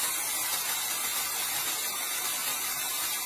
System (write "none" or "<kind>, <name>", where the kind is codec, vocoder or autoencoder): none